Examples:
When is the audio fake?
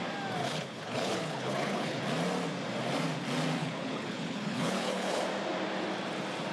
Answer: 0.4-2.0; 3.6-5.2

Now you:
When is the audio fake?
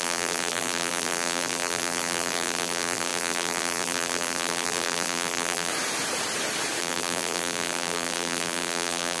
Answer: 0.0-5.7; 6.8-9.2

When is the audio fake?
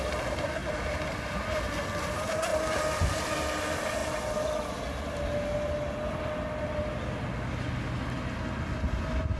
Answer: none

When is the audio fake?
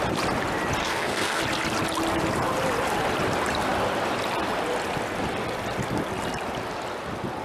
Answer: 0.8-1.4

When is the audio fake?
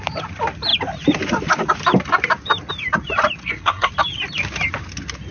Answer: 3.4-3.9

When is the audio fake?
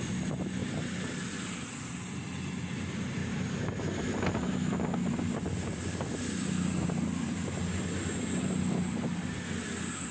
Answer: none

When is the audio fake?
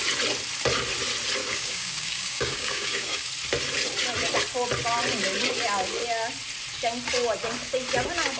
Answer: 1.4-3.3